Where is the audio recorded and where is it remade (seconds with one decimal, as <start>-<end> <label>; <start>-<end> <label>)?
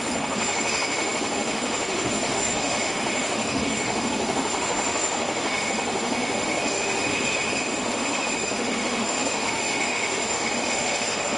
0.0-11.4 remade